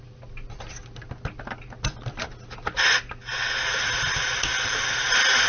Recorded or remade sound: recorded